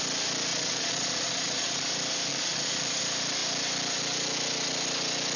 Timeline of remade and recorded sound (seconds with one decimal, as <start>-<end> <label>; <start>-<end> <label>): 0.0-0.5 recorded; 0.5-1.9 remade; 1.9-2.3 recorded; 2.3-3.0 remade; 3.0-5.4 recorded